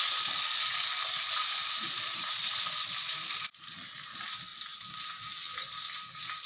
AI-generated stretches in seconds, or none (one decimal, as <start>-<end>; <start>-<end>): 1.0-2.3; 4.5-5.5